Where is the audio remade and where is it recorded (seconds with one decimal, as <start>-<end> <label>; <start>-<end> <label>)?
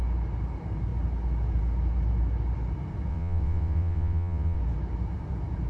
0.0-3.1 recorded; 3.1-4.6 remade; 4.6-5.7 recorded